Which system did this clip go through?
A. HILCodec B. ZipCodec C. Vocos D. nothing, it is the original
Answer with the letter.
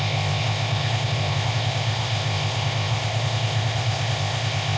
B